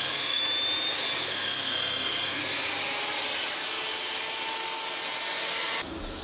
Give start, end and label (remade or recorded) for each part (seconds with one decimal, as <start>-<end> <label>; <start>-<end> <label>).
0.0-0.4 remade; 0.4-1.2 recorded; 1.2-2.4 remade; 2.4-6.2 recorded